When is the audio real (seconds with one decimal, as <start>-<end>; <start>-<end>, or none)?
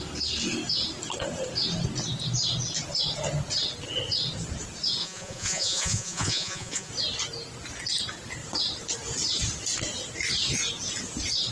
0.0-5.0; 6.9-11.5